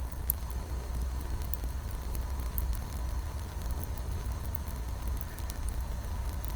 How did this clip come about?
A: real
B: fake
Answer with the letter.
A